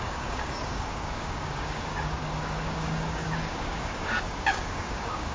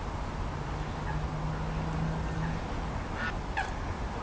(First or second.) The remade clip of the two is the first